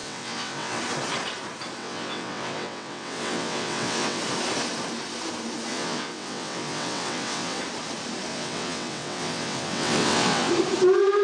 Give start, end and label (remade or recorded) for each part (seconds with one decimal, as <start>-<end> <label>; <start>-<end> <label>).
0.0-0.8 remade; 0.8-1.8 recorded; 1.8-4.2 remade; 4.2-5.7 recorded; 5.7-7.6 remade; 7.6-8.3 recorded; 8.3-10.5 remade; 10.5-11.2 recorded